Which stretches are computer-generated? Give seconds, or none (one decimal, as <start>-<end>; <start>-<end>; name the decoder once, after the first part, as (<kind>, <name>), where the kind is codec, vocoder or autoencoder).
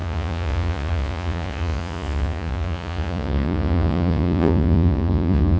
0.0-5.6 (vocoder, Vocos)